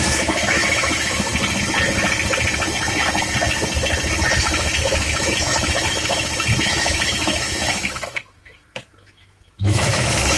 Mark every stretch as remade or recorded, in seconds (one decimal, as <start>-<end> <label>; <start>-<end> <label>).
0.0-1.3 remade; 1.3-4.4 recorded; 4.4-10.4 remade